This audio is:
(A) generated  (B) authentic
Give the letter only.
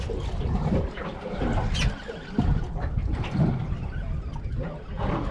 B